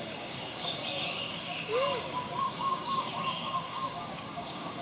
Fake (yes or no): yes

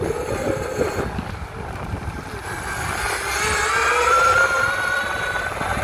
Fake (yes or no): no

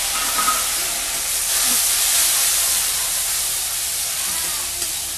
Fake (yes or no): yes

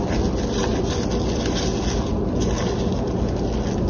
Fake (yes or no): no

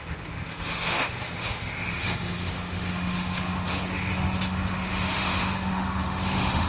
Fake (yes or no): yes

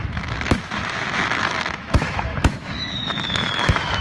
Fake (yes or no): yes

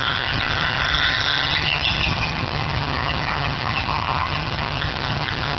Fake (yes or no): yes